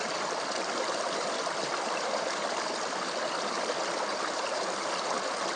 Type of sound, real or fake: fake